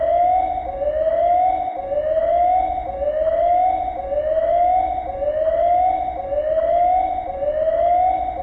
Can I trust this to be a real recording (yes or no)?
yes